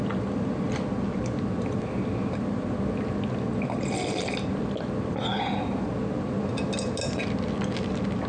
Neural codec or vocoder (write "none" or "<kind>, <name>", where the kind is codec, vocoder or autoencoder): none